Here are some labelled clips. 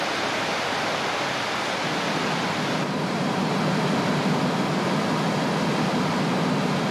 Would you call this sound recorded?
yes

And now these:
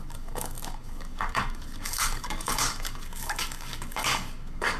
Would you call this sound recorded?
no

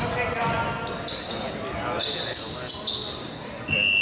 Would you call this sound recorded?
yes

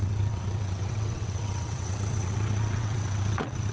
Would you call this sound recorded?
no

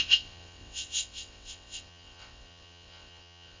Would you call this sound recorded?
no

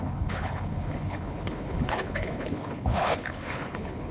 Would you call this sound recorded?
no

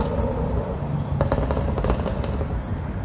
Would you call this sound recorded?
yes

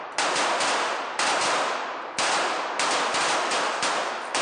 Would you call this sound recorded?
yes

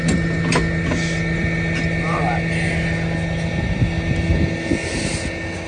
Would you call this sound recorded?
yes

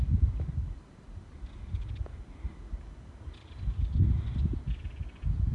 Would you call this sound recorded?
yes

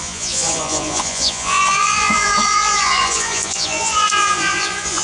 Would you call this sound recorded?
no